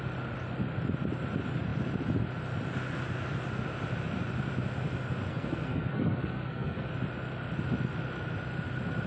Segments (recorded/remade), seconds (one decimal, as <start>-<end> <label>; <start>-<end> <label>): 0.0-5.3 recorded; 5.3-6.9 remade; 6.9-9.1 recorded